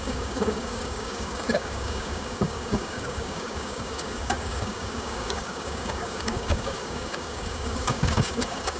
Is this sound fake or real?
fake